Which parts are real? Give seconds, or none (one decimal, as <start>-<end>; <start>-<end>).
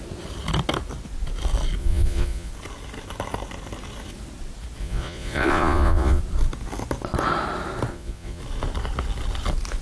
0.0-1.8; 2.5-4.8; 6.2-7.9; 8.4-9.8